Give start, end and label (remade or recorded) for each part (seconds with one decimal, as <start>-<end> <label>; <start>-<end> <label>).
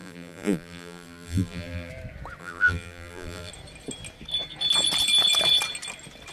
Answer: 0.0-1.9 remade; 1.9-2.4 recorded; 2.4-3.5 remade; 3.5-6.3 recorded